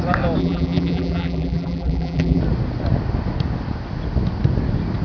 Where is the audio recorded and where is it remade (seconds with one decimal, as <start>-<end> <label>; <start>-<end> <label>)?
0.0-0.4 recorded; 0.4-2.4 remade; 2.4-5.0 recorded